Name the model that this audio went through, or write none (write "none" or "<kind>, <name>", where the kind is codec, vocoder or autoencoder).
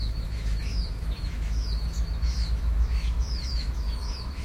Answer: autoencoder, DAC-VAE